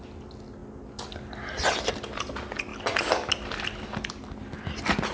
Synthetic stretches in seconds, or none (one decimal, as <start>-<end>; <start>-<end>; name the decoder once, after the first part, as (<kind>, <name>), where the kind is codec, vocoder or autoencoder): none